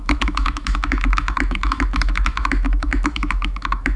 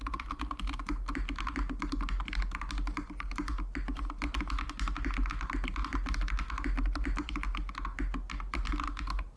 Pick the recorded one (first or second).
second